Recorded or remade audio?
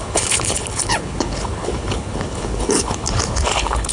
remade